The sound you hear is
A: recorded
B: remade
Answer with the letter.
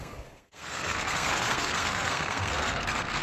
B